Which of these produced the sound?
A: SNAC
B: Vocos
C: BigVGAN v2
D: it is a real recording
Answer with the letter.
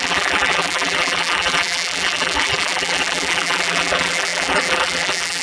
C